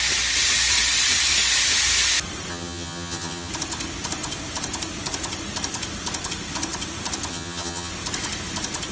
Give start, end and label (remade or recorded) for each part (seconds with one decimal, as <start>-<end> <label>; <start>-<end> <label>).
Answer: 0.0-2.5 recorded; 2.5-3.5 remade; 3.5-7.3 recorded; 7.3-7.9 remade; 7.9-8.9 recorded